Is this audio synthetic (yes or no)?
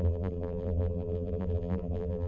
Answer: yes